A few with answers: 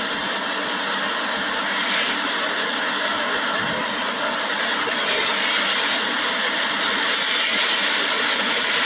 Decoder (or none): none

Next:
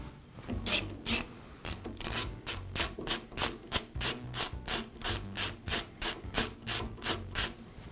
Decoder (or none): none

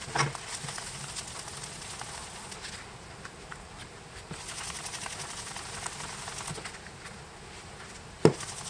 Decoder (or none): none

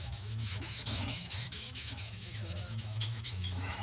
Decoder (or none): autoencoder, DAC-VAE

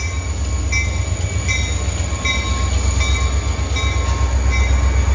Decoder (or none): none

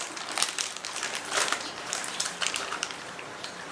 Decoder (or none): vocoder, BigVGAN v2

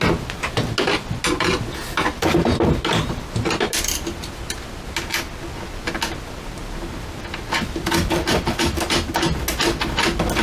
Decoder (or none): none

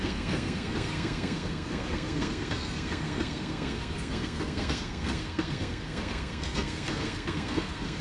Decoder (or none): codec, SNAC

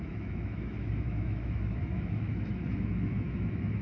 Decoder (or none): autoencoder, DAC-VAE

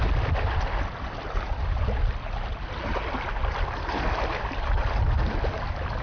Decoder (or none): none